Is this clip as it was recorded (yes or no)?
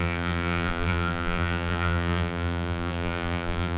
no